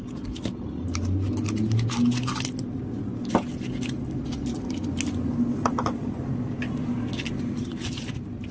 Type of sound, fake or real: real